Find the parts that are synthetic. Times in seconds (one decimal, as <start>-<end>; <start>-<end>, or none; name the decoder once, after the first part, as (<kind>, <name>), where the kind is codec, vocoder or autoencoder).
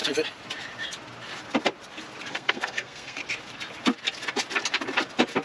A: 2.3-3.2 (codec, SNAC)